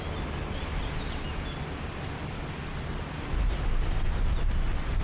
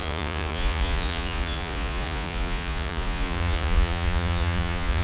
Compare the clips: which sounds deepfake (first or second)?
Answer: second